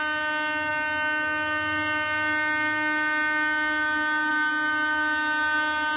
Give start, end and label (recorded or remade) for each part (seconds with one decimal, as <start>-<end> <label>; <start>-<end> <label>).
0.0-6.0 recorded